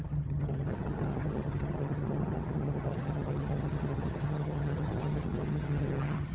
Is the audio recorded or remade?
remade